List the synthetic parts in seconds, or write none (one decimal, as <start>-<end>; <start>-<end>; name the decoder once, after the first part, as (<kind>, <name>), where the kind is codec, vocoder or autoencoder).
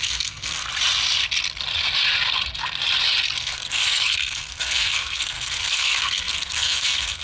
0.0-0.6 (codec, SNAC); 3.4-7.2